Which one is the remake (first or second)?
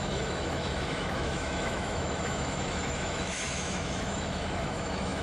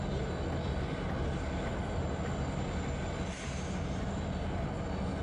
first